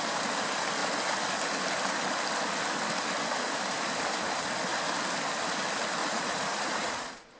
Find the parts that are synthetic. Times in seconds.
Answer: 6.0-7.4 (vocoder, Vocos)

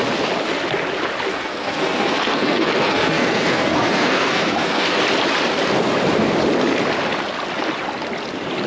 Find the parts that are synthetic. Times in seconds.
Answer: 1.3-5.0 (codec, SNAC)